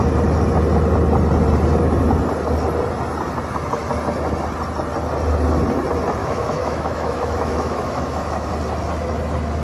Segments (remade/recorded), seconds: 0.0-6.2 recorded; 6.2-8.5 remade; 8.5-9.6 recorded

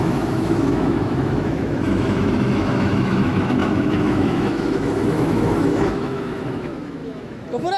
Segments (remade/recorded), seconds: 0.0-7.8 remade

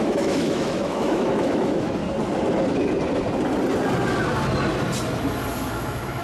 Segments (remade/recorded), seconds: 0.0-2.0 remade; 2.0-5.7 recorded; 5.7-6.2 remade

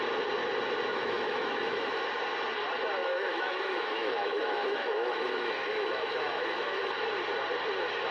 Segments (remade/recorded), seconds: 0.0-0.9 recorded; 0.9-2.0 remade; 2.0-3.0 recorded; 3.0-6.9 remade; 6.9-8.1 recorded

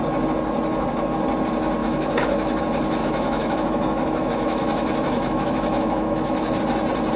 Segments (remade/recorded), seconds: 0.0-1.8 recorded; 1.8-2.6 remade; 2.6-3.0 recorded; 3.0-6.6 remade; 6.6-7.2 recorded

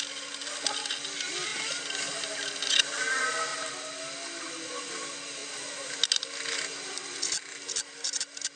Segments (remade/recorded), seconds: 0.0-8.6 recorded

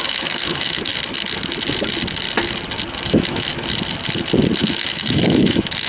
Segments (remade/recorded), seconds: 0.0-0.9 remade; 0.9-3.1 recorded; 3.1-3.5 remade; 3.5-4.6 recorded; 4.6-5.9 remade

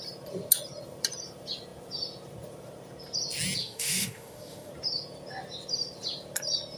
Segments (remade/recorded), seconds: 0.0-3.6 recorded; 3.6-4.7 remade; 4.7-6.8 recorded